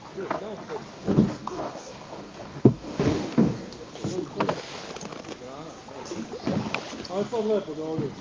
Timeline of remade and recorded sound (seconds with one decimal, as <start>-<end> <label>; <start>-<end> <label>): 0.0-0.9 recorded; 0.9-3.9 remade; 3.9-8.2 recorded